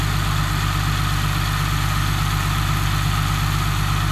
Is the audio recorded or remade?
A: recorded